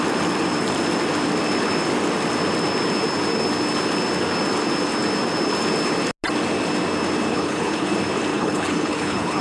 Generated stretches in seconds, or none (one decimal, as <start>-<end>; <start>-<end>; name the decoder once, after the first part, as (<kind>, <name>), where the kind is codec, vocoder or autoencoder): 7.3-7.9 (codec, HILCodec); 8.3-9.4